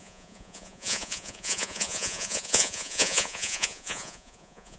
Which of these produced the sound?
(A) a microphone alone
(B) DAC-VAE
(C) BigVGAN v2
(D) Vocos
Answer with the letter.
D